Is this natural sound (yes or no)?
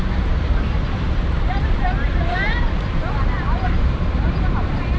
no